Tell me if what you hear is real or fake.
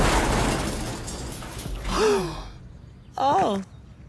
real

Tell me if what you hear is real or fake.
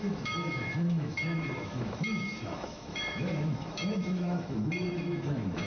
fake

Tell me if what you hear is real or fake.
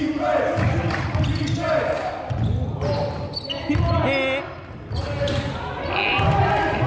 real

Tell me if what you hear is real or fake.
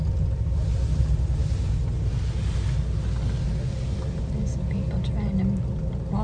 real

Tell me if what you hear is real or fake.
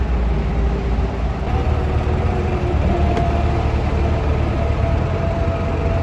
real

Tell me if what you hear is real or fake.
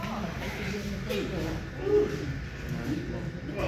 real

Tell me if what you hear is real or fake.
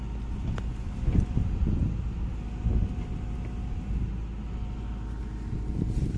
real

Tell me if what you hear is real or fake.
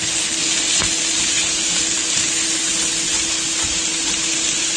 real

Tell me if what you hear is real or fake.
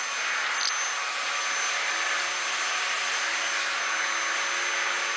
real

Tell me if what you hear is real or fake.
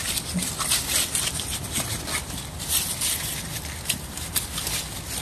real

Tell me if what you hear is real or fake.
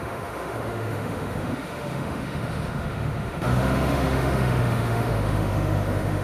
fake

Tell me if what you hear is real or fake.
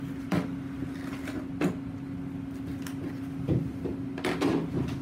real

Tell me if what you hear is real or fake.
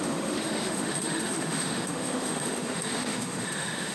fake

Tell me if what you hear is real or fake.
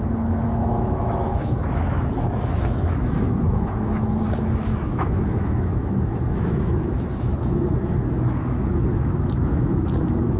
fake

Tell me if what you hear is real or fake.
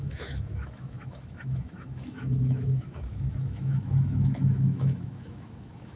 fake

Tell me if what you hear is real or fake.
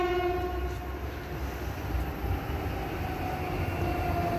real